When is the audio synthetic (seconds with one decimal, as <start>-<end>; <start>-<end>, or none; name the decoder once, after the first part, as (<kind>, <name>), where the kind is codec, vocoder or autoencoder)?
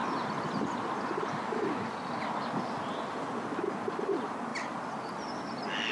none